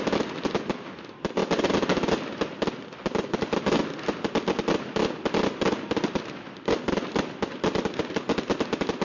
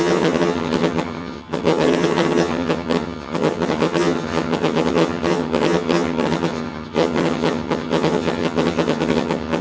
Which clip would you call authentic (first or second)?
first